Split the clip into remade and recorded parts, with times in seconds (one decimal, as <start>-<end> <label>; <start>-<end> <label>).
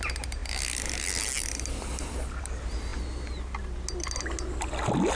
0.0-5.1 recorded